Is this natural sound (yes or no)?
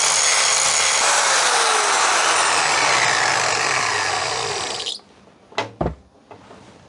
yes